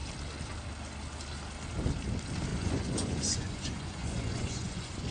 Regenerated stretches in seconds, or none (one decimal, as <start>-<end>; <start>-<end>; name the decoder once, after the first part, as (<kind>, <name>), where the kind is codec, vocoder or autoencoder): 2.5-5.1 (vocoder, Vocos)